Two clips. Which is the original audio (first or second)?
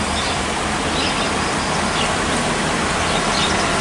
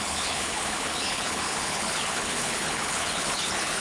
first